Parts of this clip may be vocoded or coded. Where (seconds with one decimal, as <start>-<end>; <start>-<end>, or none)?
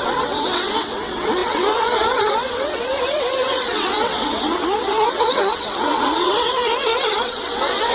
0.0-7.9